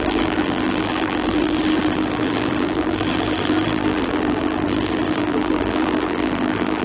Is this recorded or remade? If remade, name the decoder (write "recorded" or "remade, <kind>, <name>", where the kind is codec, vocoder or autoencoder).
remade, vocoder, BigVGAN v2